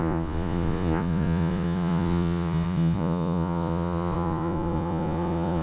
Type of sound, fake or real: fake